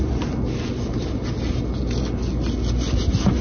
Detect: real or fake real